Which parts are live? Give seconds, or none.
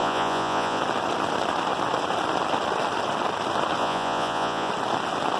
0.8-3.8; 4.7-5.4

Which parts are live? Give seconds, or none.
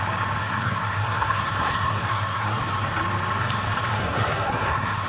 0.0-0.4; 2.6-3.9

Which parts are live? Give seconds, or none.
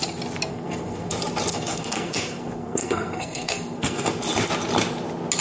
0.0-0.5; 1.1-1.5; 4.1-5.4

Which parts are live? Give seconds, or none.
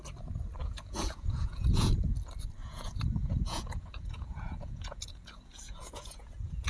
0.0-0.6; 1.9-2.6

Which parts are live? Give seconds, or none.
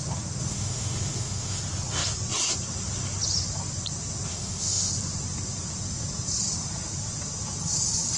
0.0-0.5; 1.6-4.3; 4.9-8.2